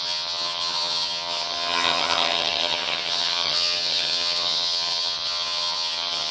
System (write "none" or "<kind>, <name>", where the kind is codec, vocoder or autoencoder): vocoder, HiFi-GAN